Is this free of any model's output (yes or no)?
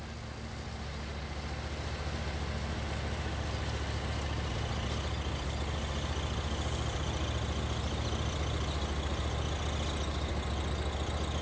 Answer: yes